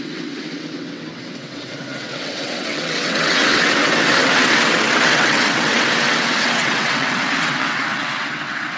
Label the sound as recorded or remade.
remade